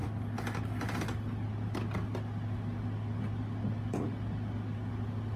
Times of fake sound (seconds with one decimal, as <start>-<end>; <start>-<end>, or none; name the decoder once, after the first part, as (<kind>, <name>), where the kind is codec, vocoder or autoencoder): none